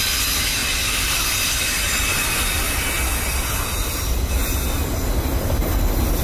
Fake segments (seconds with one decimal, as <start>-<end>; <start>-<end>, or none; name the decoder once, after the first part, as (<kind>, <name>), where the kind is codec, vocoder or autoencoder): none